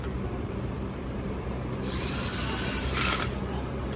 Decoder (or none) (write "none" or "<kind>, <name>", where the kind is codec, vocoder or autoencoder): vocoder, BigVGAN v2